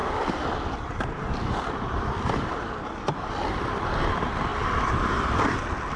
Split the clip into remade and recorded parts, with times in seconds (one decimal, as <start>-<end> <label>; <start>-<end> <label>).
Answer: 0.0-3.6 remade; 3.6-4.5 recorded; 4.5-5.1 remade; 5.1-6.0 recorded

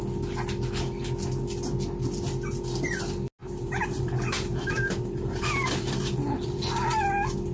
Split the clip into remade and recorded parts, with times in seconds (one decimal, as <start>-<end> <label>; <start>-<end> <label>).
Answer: 0.0-3.4 recorded; 3.4-6.6 remade; 6.6-7.5 recorded

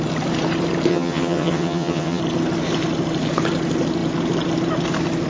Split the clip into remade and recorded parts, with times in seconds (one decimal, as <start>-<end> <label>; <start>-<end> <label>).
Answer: 0.0-0.9 recorded; 0.9-2.2 remade; 2.2-5.3 recorded

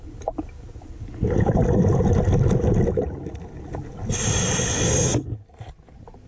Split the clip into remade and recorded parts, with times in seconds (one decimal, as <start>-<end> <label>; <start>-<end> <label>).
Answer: 0.0-6.3 recorded

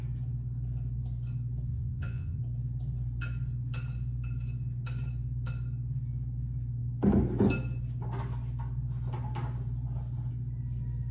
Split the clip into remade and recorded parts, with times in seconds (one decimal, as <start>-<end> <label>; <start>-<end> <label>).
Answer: 0.0-1.7 recorded; 1.7-2.4 remade; 2.4-11.1 recorded

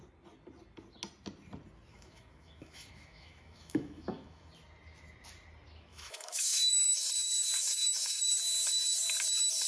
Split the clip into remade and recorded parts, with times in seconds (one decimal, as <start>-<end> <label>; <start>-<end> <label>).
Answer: 0.0-1.9 recorded; 1.9-4.5 remade; 4.5-5.9 recorded; 5.9-7.1 remade; 7.1-7.6 recorded; 7.6-8.2 remade; 8.2-9.7 recorded